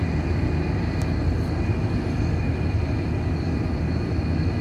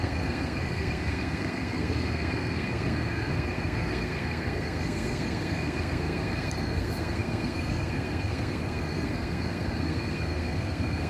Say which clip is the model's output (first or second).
second